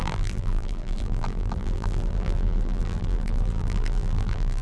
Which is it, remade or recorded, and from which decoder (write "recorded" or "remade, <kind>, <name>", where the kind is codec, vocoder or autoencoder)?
remade, vocoder, BigVGAN v2